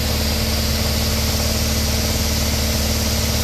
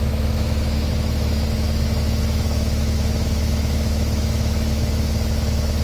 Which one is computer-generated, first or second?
second